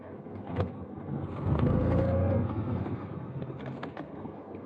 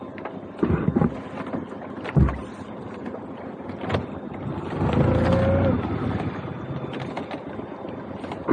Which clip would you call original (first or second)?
second